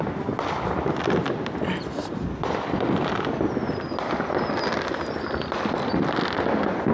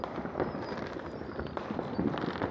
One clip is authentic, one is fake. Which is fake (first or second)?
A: second